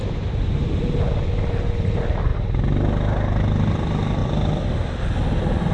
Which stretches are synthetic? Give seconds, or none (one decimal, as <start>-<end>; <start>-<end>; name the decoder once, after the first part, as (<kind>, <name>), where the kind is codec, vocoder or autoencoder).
none